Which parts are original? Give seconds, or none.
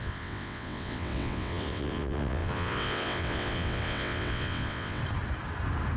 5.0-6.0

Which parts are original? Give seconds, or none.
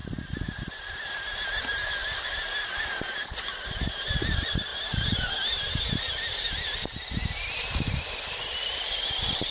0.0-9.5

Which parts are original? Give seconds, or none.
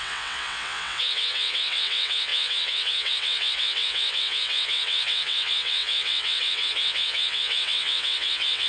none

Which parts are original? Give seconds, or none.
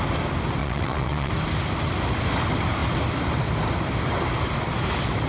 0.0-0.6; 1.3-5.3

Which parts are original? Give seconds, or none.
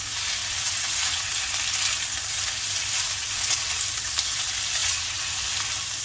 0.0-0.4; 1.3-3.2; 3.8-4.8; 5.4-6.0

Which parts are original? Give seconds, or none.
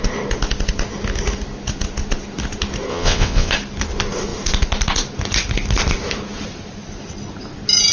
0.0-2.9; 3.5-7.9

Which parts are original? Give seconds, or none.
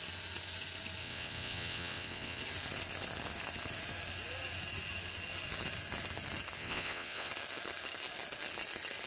0.0-1.0; 2.4-6.6; 7.3-9.1